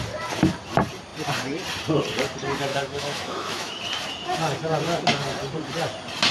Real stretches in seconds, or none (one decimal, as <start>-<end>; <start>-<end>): 0.0-2.7; 3.8-6.3

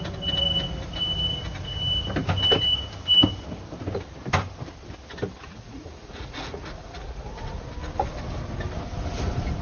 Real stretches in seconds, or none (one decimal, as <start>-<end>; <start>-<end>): 0.0-5.4; 7.6-9.6

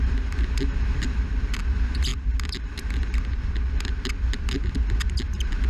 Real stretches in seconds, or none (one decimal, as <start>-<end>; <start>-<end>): 0.0-5.7

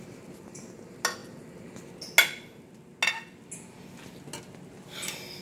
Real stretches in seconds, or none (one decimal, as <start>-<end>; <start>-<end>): 0.0-5.4

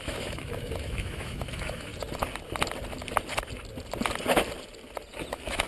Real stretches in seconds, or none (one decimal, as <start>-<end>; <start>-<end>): 1.9-5.3

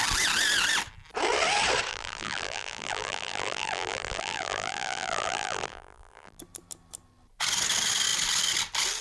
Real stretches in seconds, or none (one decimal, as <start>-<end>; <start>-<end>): 0.0-1.9; 6.4-9.0

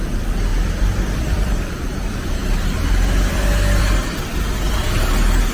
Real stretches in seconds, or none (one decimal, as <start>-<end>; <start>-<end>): 0.0-0.5; 3.8-5.5

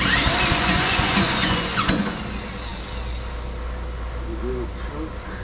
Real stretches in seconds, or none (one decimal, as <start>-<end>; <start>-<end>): 0.0-0.5; 2.2-5.4